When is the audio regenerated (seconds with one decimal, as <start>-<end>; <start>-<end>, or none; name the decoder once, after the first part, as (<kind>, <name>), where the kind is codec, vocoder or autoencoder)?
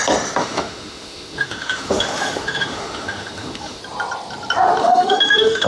0.4-3.8 (autoencoder, DAC-VAE); 4.8-5.7